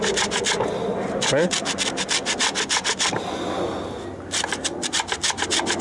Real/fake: real